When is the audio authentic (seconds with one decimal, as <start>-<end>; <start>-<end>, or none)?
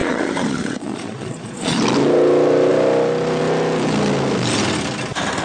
1.8-5.4